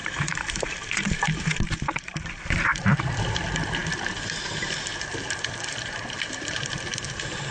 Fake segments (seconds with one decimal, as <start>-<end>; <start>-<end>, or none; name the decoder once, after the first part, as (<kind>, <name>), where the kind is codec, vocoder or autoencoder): 0.0-7.5 (vocoder, BigVGAN v2)